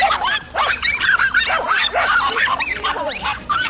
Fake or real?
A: fake